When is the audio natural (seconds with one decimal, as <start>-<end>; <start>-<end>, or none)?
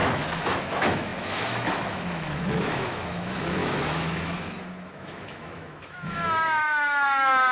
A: none